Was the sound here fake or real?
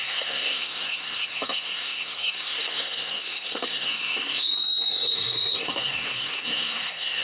fake